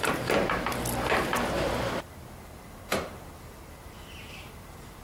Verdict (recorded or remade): remade